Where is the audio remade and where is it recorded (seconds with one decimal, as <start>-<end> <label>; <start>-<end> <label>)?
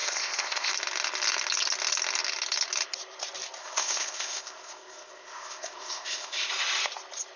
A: 0.0-0.7 remade; 0.7-3.6 recorded; 3.6-6.5 remade; 6.5-7.4 recorded